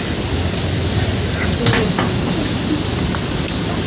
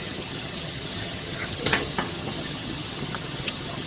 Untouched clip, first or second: first